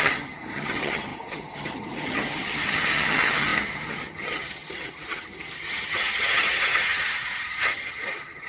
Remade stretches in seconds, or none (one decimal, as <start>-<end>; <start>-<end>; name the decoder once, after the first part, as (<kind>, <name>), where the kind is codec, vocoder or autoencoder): 0.0-8.5 (vocoder, HiFi-GAN)